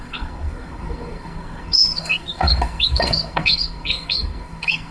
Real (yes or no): no